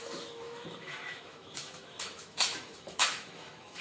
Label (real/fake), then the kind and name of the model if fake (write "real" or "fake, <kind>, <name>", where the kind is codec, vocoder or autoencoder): fake, autoencoder, DAC-VAE